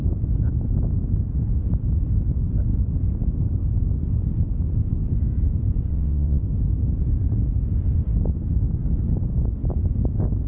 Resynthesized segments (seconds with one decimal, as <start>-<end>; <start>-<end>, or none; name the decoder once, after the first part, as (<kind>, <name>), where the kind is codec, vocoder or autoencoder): 5.9-6.4 (vocoder, WaveNeXt)